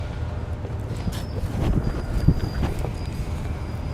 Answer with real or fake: real